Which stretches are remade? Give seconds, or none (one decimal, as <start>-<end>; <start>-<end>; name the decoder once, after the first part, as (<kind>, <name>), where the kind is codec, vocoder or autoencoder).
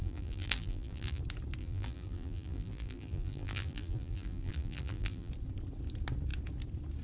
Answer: 0.0-1.2 (vocoder, BigVGAN v2); 1.6-5.3